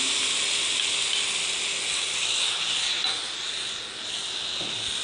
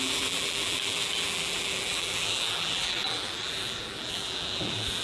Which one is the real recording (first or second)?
first